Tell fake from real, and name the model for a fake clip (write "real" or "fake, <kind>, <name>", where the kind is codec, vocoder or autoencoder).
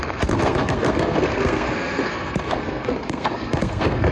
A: fake, codec, SNAC